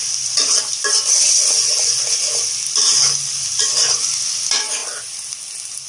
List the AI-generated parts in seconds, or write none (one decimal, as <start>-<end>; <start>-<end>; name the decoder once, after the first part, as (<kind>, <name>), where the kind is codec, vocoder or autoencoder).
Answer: 0.7-1.4 (vocoder, BigVGAN v2); 2.9-4.2